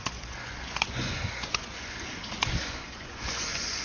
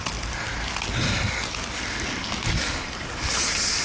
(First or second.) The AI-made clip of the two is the first